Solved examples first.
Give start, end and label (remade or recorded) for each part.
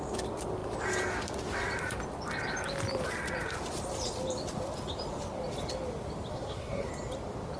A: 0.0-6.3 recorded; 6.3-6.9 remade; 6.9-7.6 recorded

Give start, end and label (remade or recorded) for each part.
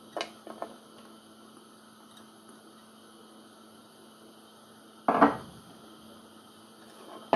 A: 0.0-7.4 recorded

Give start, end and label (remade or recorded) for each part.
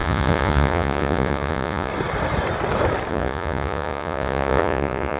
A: 0.0-1.9 remade; 1.9-3.1 recorded; 3.1-5.2 remade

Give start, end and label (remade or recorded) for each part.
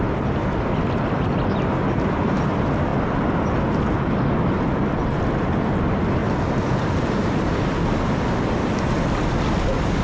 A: 0.0-10.0 recorded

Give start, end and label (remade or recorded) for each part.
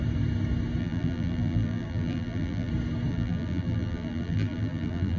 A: 0.0-0.8 recorded; 0.8-2.7 remade; 2.7-3.1 recorded; 3.1-5.2 remade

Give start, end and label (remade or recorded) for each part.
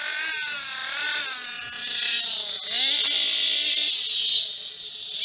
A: 0.0-5.2 recorded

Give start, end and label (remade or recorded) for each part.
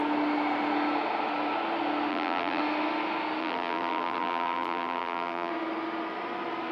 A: 0.0-2.1 recorded; 2.1-2.6 remade; 2.6-3.4 recorded; 3.4-5.5 remade; 5.5-6.7 recorded